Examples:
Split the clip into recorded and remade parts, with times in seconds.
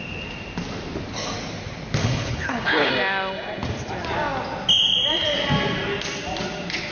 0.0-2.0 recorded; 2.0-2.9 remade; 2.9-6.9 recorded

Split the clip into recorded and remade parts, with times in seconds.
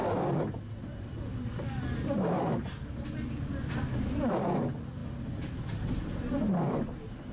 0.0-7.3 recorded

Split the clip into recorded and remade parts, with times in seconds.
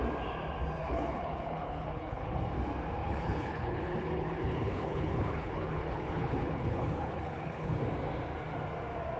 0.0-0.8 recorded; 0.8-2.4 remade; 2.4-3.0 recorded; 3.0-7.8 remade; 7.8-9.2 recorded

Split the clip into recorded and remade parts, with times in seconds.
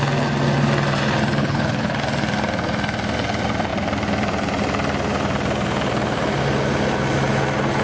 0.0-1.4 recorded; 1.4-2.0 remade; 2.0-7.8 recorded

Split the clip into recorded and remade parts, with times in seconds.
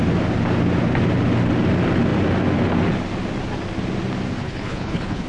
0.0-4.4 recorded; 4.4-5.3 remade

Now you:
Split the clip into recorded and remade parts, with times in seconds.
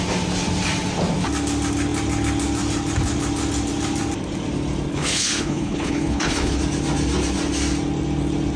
0.0-4.9 recorded; 4.9-6.6 remade; 6.6-8.6 recorded